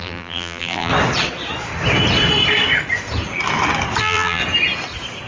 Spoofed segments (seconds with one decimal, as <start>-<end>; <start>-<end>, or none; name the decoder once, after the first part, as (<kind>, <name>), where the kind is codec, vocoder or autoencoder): 0.0-0.9 (vocoder, BigVGAN v2); 4.0-4.4